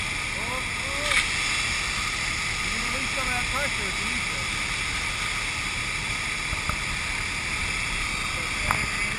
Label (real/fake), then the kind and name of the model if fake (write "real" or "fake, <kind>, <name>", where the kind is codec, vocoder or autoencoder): real